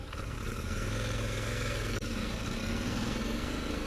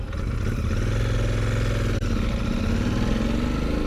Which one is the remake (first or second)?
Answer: first